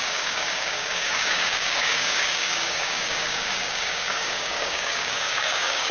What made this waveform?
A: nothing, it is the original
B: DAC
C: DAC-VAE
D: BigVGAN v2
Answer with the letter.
B